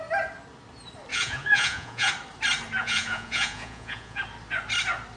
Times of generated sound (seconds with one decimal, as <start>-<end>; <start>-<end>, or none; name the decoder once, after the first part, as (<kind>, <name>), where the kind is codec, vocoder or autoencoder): 1.1-2.1 (vocoder, Vocos); 2.8-4.2